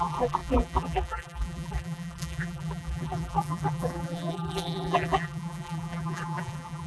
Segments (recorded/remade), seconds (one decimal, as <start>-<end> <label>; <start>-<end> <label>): 0.0-6.9 remade